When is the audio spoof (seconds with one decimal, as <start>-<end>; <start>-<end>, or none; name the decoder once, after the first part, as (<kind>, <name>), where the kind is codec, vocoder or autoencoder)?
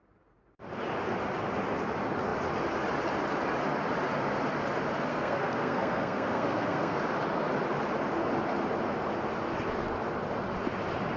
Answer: 5.1-7.0 (codec, SNAC)